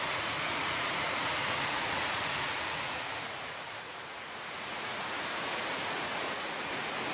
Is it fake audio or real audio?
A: fake